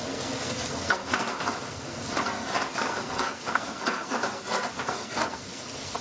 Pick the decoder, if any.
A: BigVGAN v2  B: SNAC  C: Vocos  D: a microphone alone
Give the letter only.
B